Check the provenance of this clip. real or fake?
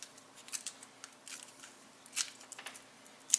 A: real